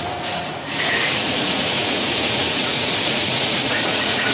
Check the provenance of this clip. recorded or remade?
remade